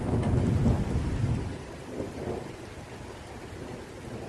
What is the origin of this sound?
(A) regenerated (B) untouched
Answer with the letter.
A